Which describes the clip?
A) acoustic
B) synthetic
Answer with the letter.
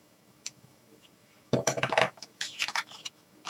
B